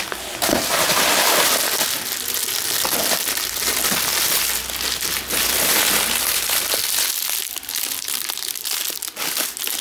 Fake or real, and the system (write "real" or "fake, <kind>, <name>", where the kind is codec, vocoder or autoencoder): real